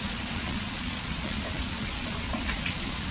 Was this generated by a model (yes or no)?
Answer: yes